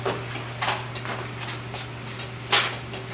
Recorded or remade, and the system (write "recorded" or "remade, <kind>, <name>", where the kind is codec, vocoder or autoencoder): recorded